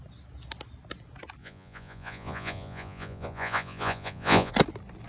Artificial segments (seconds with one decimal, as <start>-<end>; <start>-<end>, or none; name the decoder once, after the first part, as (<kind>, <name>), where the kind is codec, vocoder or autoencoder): 1.4-4.5 (vocoder, Vocos)

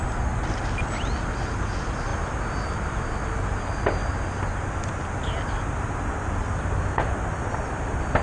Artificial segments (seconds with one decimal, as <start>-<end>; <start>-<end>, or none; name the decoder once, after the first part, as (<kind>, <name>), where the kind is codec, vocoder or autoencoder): none

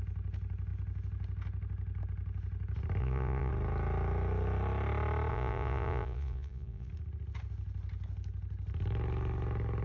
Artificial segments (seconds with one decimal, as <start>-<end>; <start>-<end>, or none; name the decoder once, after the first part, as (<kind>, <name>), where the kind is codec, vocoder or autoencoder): 3.0-3.5 (vocoder, Vocos); 5.3-6.9

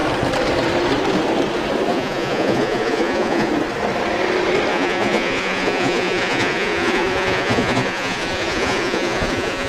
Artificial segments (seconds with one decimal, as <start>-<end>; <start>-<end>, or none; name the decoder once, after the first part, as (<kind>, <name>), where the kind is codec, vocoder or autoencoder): 1.9-3.5 (vocoder, Vocos); 4.7-9.7

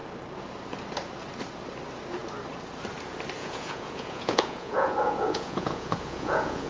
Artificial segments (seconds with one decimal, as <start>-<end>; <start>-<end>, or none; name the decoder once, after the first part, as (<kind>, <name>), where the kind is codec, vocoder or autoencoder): 3.4-6.7 (vocoder, Vocos)